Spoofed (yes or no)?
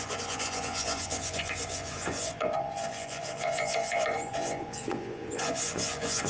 yes